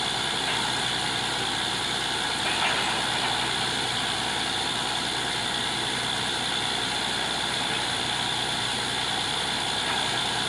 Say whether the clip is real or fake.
real